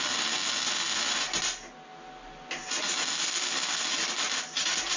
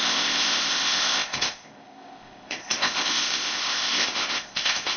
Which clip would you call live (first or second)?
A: first